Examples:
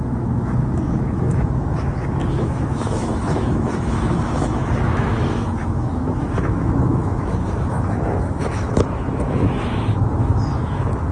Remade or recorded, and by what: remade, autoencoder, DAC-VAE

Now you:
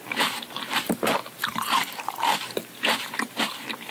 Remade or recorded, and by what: remade, vocoder, BigVGAN v2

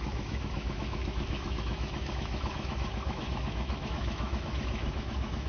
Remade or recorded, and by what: remade, autoencoder, DAC-VAE